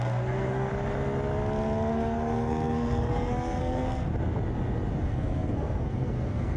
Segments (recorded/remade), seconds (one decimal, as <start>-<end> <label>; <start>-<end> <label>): 0.0-0.7 remade; 0.7-1.9 recorded; 1.9-4.1 remade; 4.1-5.0 recorded; 5.0-6.6 remade